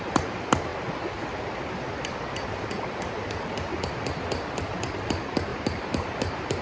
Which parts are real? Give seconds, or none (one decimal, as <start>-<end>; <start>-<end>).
0.0-5.5